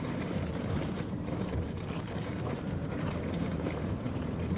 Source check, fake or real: fake